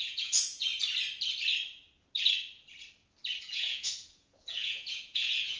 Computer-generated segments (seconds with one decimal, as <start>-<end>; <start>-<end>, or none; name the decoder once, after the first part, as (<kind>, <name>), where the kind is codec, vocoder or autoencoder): 0.0-0.7 (vocoder, Vocos); 3.4-5.6